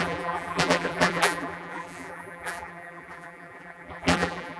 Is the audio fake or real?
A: fake